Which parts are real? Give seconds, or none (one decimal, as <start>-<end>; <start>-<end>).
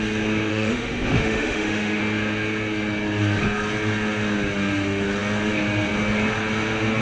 0.0-0.5; 2.0-7.0